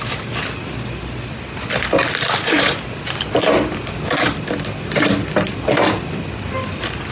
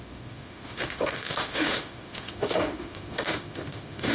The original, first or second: first